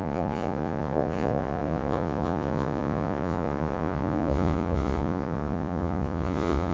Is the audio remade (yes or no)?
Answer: yes